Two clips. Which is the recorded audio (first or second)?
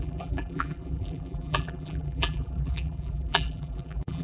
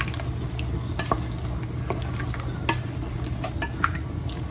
second